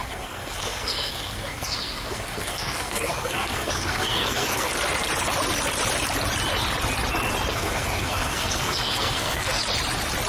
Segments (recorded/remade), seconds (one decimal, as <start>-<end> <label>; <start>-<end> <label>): 0.0-4.7 remade; 4.7-7.5 recorded; 7.5-9.6 remade; 9.6-10.3 recorded